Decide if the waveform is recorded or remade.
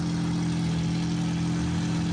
recorded